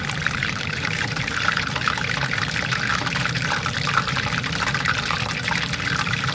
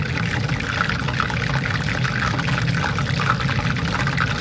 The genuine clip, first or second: second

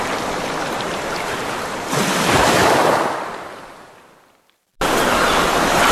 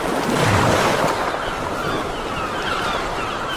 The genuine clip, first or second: second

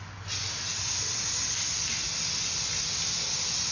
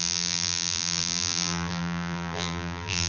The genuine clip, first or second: first